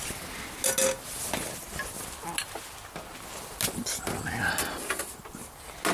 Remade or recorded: recorded